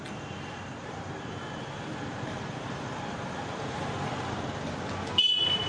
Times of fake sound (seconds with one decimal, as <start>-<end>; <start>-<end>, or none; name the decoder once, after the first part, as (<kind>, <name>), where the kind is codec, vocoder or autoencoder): 0.8-3.9 (vocoder, BigVGAN v2)